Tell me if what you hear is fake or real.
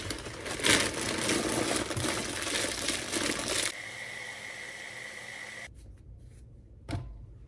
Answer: real